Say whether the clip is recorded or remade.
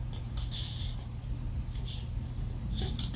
recorded